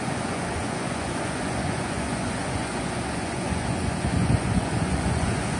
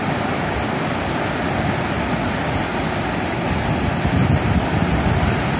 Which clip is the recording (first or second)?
second